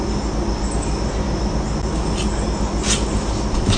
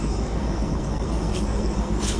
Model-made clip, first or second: second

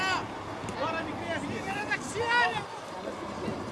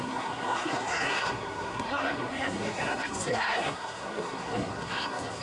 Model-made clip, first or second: second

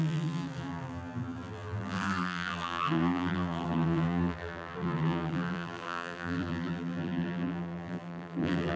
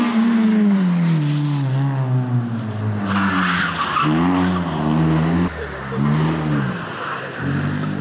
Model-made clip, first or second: first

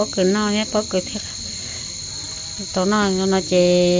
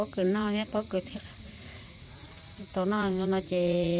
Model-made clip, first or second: second